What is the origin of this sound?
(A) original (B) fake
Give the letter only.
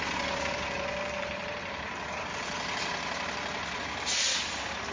A